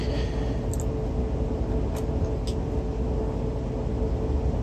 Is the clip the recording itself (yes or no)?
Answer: yes